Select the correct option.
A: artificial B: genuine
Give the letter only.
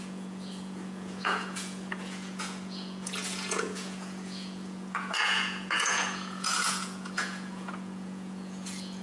A